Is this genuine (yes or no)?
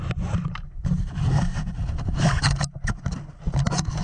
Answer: yes